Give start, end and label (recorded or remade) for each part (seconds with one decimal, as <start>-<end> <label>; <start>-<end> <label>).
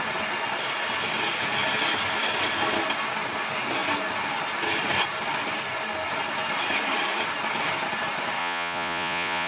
0.0-8.4 recorded; 8.4-9.5 remade